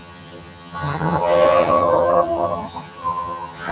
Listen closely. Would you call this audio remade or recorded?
remade